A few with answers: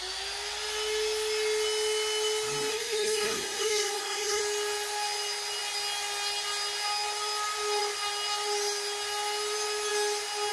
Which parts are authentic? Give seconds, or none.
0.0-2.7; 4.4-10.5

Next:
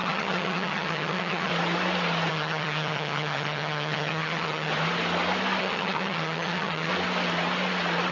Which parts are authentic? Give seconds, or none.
1.5-2.3; 4.7-5.6; 6.9-8.1